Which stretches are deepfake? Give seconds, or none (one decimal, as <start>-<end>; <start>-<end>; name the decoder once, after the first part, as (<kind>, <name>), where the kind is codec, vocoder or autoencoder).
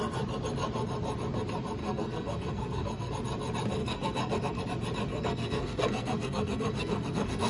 1.8-3.1 (codec, SNAC); 3.8-4.6; 5.1-7.5